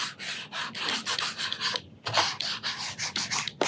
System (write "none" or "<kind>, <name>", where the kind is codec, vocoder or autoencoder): none